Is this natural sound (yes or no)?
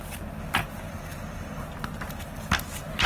yes